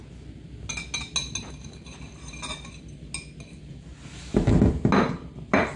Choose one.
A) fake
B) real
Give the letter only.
B